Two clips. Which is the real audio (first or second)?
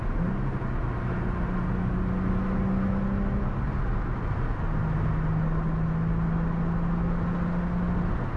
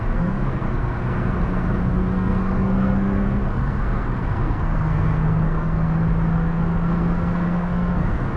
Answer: first